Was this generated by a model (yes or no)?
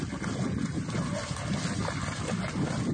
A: no